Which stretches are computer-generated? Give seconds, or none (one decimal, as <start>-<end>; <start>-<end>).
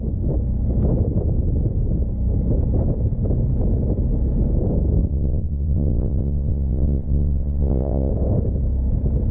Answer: 5.1-8.1